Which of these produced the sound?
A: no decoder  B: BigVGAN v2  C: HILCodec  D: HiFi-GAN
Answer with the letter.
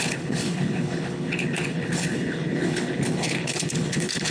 C